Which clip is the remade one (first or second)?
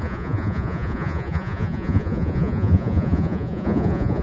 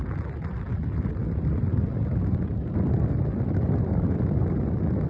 first